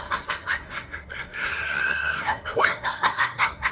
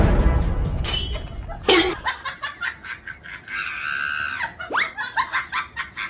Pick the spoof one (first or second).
first